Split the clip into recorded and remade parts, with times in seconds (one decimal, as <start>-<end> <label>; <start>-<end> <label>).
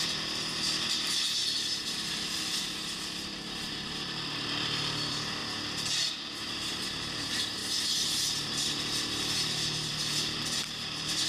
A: 0.0-7.6 remade; 7.6-8.4 recorded; 8.4-11.3 remade